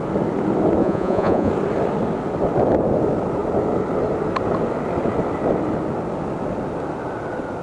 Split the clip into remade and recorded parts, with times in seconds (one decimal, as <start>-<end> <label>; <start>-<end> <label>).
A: 0.0-0.8 recorded; 0.8-1.5 remade; 1.5-7.6 recorded